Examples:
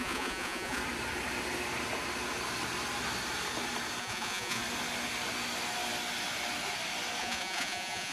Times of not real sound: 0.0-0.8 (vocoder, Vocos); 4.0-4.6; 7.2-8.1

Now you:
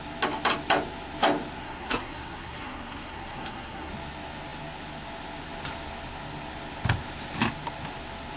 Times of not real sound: 1.6-3.9 (codec, SNAC)

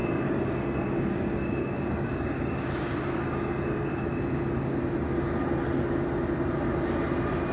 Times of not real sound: 0.0-4.0 (codec, DAC)

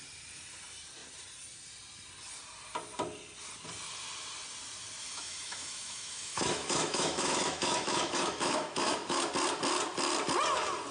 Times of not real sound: 5.0-9.3 (autoencoder, DAC-VAE)

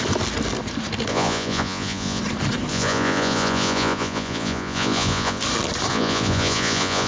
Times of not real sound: 1.1-2.2 (vocoder, Vocos); 2.7-5.4; 5.9-7.1

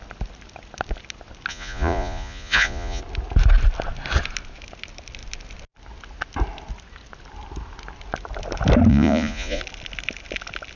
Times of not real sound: 1.5-3.0 (vocoder, Vocos); 8.9-9.6

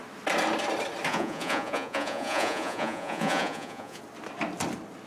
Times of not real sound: 1.1-4.0 (vocoder, Vocos)

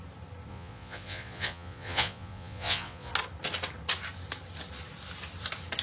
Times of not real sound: 0.5-3.1 (vocoder, Vocos)